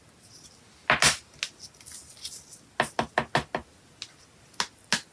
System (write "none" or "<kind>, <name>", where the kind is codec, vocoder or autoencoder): none